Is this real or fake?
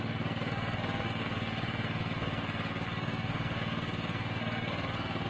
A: fake